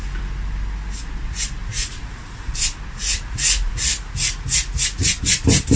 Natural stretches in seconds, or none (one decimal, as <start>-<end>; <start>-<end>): 0.0-1.6; 2.5-3.0; 5.1-5.8